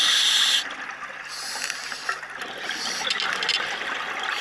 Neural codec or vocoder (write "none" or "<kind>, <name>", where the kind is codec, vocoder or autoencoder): none